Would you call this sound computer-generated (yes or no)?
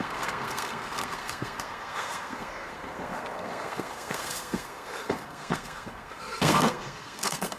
yes